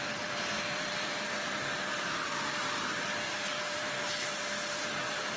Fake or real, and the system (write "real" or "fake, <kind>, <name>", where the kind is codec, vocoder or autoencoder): fake, vocoder, BigVGAN v2